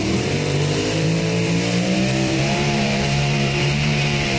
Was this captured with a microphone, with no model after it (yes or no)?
no